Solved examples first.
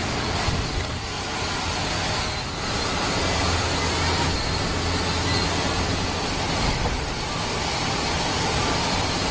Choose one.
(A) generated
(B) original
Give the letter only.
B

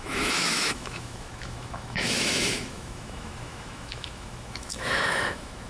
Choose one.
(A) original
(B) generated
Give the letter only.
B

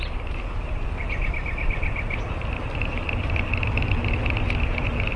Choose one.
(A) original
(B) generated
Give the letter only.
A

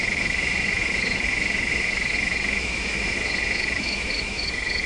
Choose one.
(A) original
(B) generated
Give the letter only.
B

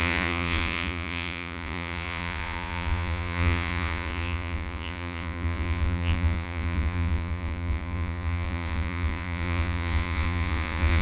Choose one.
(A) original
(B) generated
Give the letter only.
B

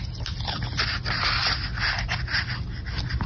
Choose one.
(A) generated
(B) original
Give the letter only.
B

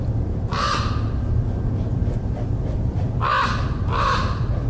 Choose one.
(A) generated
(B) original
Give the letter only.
B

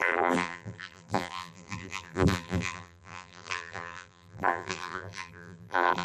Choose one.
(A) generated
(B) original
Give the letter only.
A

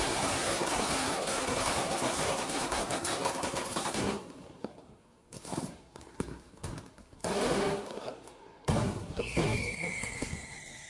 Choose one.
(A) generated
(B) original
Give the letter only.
A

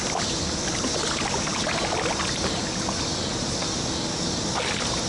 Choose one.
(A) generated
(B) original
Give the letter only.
B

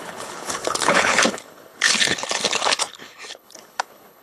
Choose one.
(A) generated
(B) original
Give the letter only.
A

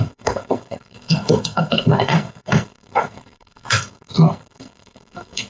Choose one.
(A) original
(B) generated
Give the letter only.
B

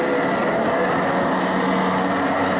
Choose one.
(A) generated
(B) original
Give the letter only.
B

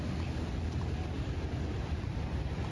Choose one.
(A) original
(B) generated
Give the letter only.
B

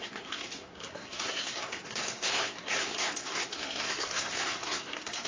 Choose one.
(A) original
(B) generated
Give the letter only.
B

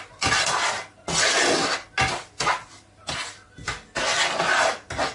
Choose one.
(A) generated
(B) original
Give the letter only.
B